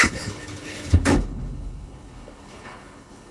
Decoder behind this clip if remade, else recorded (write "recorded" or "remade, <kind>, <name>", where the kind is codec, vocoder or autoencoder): remade, codec, HILCodec